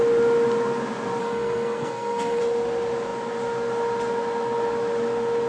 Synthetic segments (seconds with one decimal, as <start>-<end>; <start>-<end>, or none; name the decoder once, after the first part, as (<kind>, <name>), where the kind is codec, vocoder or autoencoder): 1.2-2.4 (codec, SNAC)